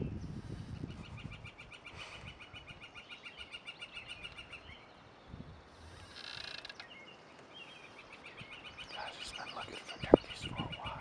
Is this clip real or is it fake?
real